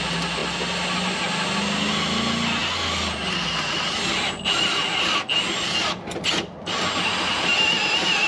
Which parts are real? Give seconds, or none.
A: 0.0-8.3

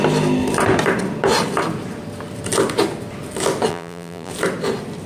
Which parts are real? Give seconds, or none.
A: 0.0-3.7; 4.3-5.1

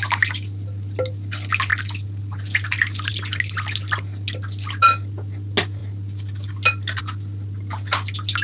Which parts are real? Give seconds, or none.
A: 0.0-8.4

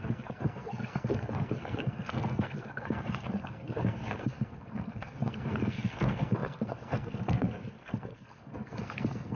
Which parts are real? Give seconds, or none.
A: none

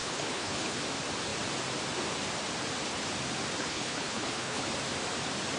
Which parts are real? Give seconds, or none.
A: 0.8-3.6; 4.7-5.6

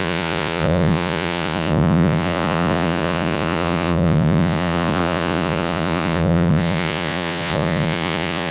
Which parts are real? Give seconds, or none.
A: none